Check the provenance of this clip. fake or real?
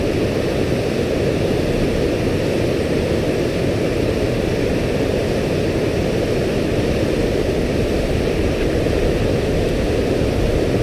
real